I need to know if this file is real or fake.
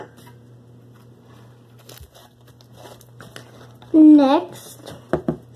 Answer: real